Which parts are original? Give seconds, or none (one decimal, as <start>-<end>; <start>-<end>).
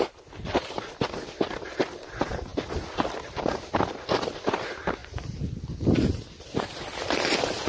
0.0-7.7